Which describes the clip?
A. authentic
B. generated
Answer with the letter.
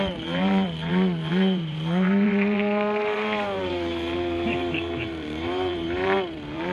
B